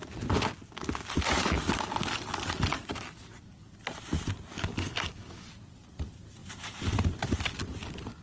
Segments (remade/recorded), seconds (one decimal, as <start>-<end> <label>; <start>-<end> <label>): 0.0-4.5 recorded; 4.5-5.5 remade; 5.5-8.2 recorded